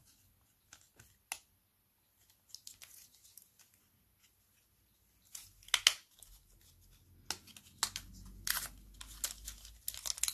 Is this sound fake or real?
real